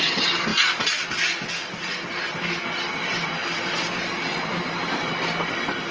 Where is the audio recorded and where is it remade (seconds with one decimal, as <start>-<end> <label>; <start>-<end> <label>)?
0.0-5.9 recorded